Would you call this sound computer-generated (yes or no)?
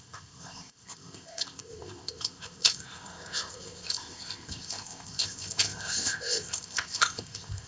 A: yes